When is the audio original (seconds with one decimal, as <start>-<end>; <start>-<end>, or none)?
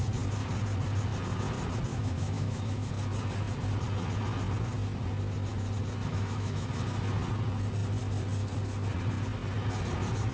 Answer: 0.0-1.9; 2.9-6.1; 6.7-10.3